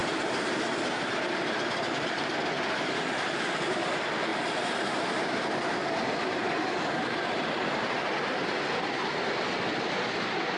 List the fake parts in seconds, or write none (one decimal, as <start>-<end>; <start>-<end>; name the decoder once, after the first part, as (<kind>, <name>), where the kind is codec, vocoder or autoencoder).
0.0-2.3 (vocoder, BigVGAN v2); 4.3-6.4